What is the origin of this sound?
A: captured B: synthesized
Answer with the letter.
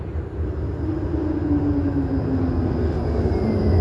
A